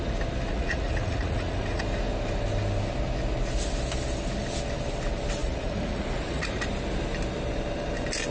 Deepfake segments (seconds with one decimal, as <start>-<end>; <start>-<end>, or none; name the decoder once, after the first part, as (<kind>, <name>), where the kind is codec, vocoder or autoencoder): 0.5-1.8 (vocoder, Vocos); 5.4-6.6